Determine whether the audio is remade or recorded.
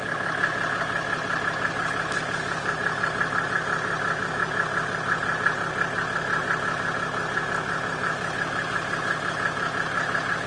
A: recorded